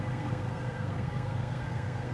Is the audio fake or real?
fake